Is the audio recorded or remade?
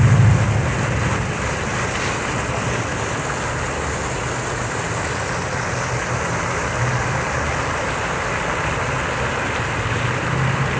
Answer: recorded